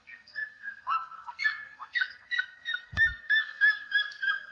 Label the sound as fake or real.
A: fake